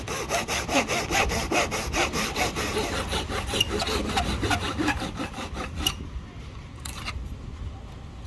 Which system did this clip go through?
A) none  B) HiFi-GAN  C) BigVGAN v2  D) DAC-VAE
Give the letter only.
A